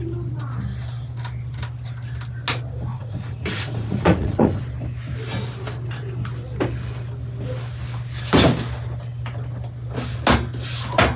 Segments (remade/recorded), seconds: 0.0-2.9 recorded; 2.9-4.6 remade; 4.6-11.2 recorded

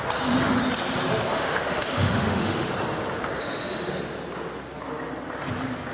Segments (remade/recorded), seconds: 0.0-1.3 recorded; 1.3-2.7 remade; 2.7-3.4 recorded; 3.4-4.0 remade; 4.0-5.9 recorded

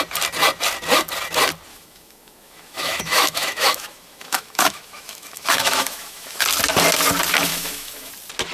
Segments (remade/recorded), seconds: 0.0-1.7 recorded; 1.7-6.4 remade; 6.4-7.5 recorded; 7.5-8.1 remade; 8.1-8.5 recorded

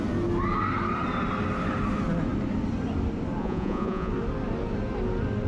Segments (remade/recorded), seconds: 0.0-3.4 recorded; 3.4-4.1 remade; 4.1-5.5 recorded

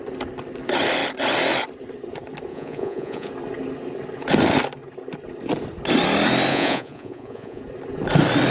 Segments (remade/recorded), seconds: 0.0-2.5 recorded; 2.5-3.3 remade; 3.3-6.5 recorded; 6.5-7.6 remade; 7.6-8.5 recorded

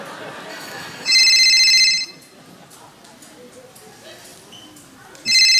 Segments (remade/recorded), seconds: 0.0-0.5 recorded; 0.5-1.2 remade; 1.2-5.6 recorded